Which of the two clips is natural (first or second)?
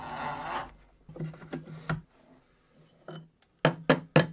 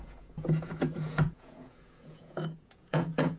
first